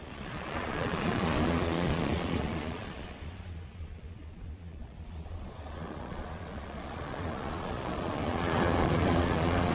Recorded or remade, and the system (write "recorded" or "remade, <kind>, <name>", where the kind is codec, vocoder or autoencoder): remade, vocoder, Vocos